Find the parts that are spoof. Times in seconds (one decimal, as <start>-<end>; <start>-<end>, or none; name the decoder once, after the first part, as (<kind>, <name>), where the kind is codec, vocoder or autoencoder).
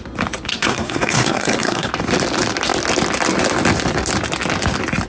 0.5-1.9 (codec, SNAC)